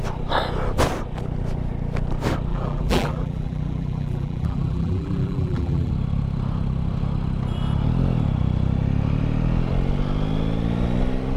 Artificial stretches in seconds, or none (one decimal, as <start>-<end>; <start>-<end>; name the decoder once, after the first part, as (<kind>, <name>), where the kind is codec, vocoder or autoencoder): 2.5-5.9 (vocoder, BigVGAN v2)